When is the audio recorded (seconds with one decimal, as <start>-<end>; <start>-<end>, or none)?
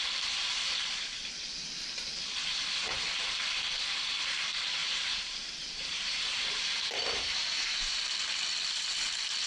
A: 0.0-0.4; 1.8-4.8; 8.1-9.5